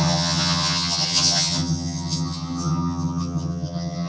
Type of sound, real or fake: fake